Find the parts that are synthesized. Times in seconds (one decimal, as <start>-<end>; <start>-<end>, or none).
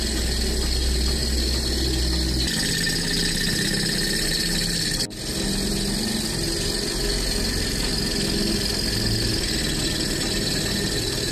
none